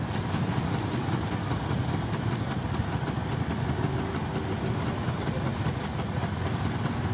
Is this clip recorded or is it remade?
recorded